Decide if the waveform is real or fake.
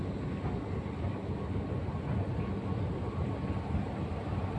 real